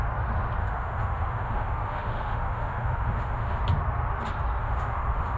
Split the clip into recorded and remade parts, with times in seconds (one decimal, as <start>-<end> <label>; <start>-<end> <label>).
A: 0.0-0.6 recorded; 0.6-3.6 remade; 3.6-4.6 recorded; 4.6-5.4 remade